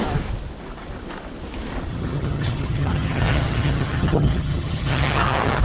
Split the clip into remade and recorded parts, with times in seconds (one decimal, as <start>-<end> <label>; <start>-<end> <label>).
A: 0.0-1.9 recorded; 1.9-5.6 remade

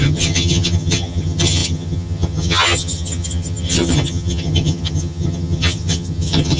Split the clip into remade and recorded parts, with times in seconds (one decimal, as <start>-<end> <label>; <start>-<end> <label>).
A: 0.0-6.6 remade

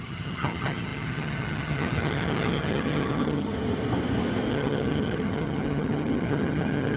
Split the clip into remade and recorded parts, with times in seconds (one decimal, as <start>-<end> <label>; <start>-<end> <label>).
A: 0.0-3.5 remade; 3.5-4.5 recorded; 4.5-7.0 remade

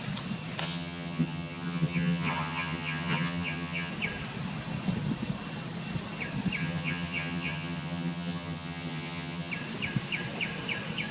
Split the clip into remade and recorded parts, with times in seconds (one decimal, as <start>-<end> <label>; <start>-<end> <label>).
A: 0.0-0.6 recorded; 0.6-3.9 remade; 3.9-6.6 recorded; 6.6-9.5 remade; 9.5-11.1 recorded